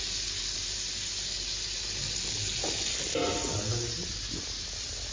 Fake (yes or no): no